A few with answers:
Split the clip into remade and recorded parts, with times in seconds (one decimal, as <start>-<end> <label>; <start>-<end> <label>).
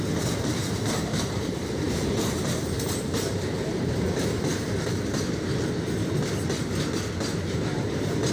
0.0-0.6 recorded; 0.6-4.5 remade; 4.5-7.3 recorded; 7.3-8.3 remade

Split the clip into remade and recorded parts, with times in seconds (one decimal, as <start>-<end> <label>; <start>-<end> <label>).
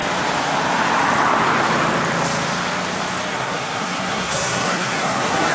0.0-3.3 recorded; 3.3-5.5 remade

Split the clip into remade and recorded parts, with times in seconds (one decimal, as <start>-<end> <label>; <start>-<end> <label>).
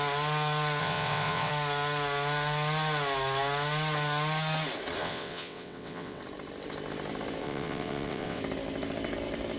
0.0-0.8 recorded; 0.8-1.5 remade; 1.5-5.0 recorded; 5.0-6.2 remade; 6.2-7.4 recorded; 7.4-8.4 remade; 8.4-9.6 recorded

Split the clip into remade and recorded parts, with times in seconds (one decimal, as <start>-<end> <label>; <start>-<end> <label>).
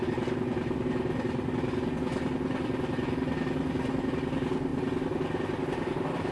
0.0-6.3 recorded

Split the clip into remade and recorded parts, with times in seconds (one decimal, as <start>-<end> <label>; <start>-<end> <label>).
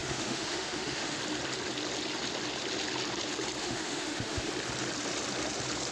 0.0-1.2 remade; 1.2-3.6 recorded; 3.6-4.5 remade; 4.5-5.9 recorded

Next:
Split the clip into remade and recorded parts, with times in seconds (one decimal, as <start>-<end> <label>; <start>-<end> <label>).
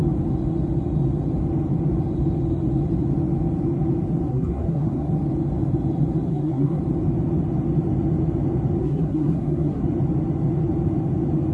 0.0-4.3 recorded; 4.3-5.1 remade; 5.1-6.3 recorded; 6.3-6.8 remade; 6.8-8.8 recorded; 8.8-9.8 remade; 9.8-11.5 recorded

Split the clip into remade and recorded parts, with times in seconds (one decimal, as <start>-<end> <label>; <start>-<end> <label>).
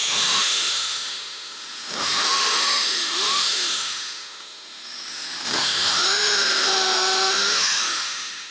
0.0-8.5 remade